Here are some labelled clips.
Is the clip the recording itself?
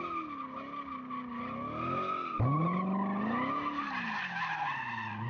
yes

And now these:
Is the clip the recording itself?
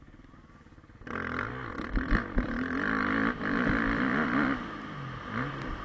yes